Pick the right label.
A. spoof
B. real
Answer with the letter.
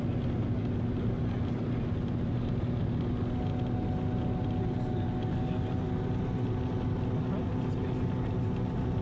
B